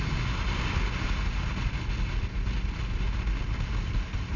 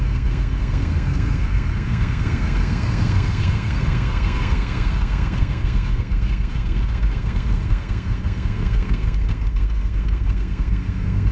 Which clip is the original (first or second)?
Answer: first